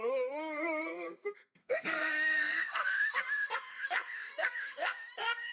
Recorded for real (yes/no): no